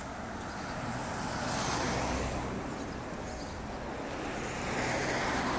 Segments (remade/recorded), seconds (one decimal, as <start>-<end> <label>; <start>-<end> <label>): 0.0-5.6 recorded